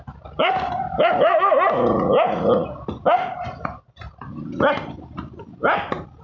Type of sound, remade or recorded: recorded